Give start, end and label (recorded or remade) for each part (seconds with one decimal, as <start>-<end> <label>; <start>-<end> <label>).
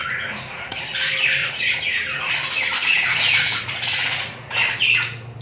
0.0-0.8 remade; 0.8-1.4 recorded; 1.4-2.3 remade; 2.3-2.8 recorded; 2.8-4.8 remade; 4.8-5.4 recorded